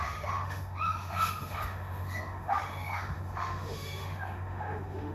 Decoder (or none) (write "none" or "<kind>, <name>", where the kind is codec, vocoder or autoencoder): autoencoder, DAC-VAE